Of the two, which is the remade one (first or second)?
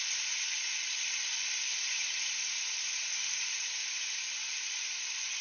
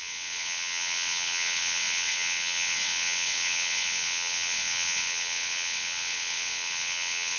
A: second